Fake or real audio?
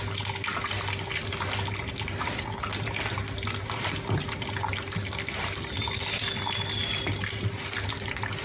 real